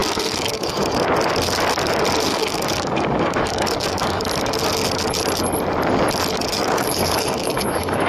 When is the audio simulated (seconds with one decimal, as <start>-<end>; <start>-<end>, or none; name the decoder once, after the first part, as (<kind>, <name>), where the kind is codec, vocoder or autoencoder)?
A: 0.0-0.8 (codec, DAC); 2.3-4.2; 6.5-8.1